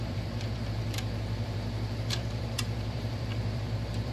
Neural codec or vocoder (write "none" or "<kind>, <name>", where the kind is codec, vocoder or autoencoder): vocoder, BigVGAN v2